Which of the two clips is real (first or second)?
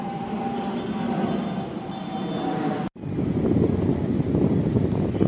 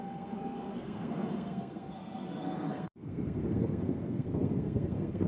first